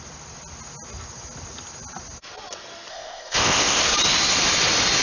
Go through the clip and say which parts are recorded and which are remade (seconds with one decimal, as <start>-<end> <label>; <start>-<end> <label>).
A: 0.0-2.9 recorded; 2.9-3.8 remade; 3.8-5.0 recorded